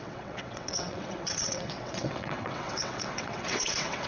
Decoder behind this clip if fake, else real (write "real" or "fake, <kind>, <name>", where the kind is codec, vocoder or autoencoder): fake, vocoder, WaveNeXt